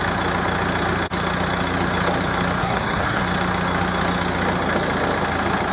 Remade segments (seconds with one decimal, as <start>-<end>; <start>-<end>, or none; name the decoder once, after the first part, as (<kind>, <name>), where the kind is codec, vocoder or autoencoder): 2.6-3.2 (codec, SNAC)